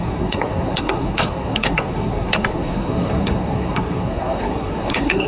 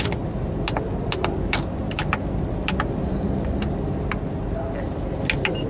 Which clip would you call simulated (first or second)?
first